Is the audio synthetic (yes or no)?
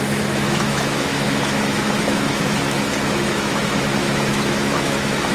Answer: yes